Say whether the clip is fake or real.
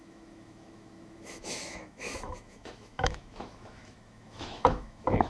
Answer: fake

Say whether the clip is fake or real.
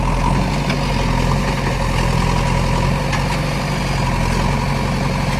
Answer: real